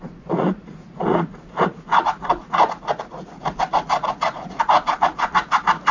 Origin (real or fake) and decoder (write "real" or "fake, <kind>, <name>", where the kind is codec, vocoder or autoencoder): fake, vocoder, Vocos